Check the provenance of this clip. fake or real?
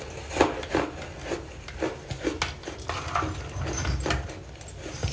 real